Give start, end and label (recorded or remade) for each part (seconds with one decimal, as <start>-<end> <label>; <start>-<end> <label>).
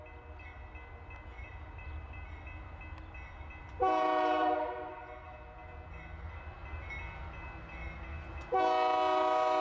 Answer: 0.0-1.5 recorded; 1.5-2.4 remade; 2.4-3.6 recorded; 3.6-5.0 remade; 5.0-9.6 recorded